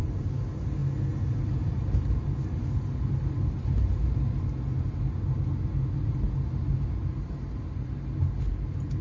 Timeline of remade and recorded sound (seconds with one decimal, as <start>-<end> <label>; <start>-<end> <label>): 0.0-9.0 recorded

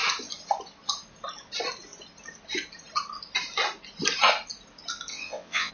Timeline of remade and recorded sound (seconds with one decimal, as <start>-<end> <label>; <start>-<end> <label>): 0.0-5.1 recorded; 5.1-5.7 remade

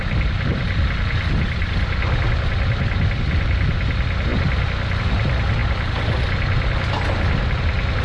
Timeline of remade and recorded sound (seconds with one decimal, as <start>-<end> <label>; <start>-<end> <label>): 0.0-8.0 recorded

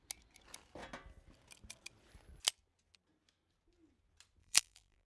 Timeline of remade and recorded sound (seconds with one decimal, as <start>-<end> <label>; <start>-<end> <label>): 0.0-4.4 recorded; 4.4-5.1 remade

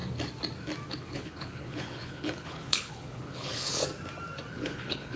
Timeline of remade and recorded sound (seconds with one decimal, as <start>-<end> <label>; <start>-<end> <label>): 0.0-0.9 recorded; 0.9-3.8 remade; 3.8-4.5 recorded; 4.5-5.2 remade

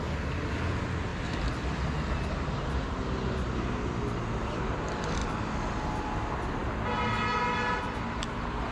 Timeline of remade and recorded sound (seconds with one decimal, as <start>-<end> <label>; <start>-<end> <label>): 0.0-8.7 recorded

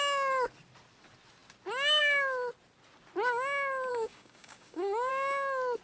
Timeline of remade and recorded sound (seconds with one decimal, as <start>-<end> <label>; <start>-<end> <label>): 0.0-3.9 recorded; 3.9-5.1 remade; 5.1-5.8 recorded

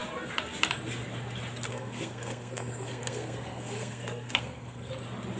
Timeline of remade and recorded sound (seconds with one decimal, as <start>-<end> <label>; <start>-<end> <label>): 0.0-1.7 recorded; 1.7-4.9 remade; 4.9-5.4 recorded